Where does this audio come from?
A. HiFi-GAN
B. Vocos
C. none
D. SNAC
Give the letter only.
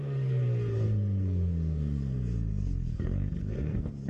D